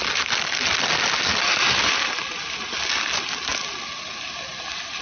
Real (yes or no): yes